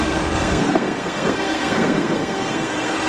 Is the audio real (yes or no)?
no